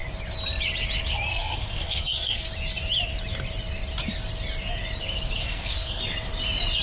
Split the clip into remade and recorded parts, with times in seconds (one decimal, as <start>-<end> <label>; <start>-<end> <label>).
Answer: 0.0-1.3 recorded; 1.3-2.5 remade; 2.5-5.4 recorded; 5.4-6.0 remade; 6.0-6.8 recorded

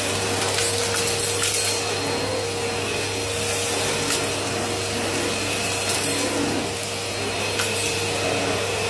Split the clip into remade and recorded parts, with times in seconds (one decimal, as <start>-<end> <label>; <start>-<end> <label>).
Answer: 0.0-8.9 recorded

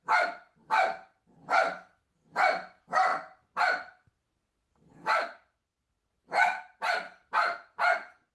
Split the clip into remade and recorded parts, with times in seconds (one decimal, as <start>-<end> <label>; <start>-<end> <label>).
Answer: 0.0-8.3 recorded